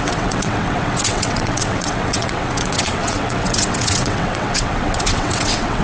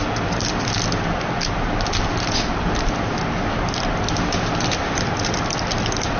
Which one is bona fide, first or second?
second